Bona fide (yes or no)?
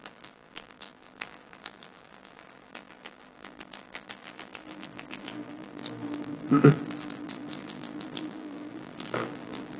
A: no